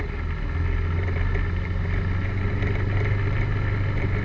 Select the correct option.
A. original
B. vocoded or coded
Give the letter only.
A